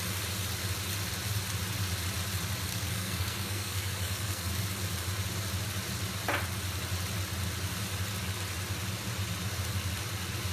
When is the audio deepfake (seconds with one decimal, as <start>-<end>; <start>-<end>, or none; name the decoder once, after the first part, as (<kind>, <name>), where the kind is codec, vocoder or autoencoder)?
2.7-4.5 (codec, SNAC)